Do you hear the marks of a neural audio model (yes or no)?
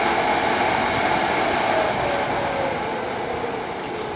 no